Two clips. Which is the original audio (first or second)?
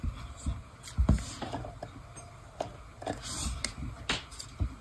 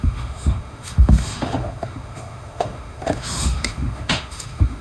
first